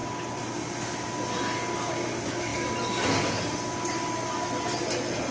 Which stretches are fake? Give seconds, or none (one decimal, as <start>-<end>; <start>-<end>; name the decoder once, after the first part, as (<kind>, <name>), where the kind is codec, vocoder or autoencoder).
none